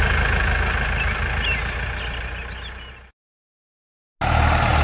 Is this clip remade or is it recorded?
recorded